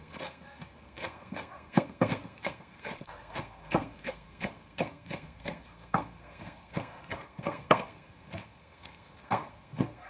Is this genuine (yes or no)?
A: no